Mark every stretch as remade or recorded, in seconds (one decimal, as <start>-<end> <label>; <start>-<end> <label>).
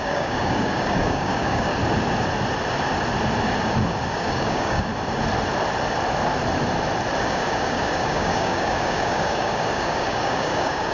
0.0-1.7 remade; 1.7-4.1 recorded; 4.1-4.9 remade; 4.9-7.2 recorded; 7.2-10.9 remade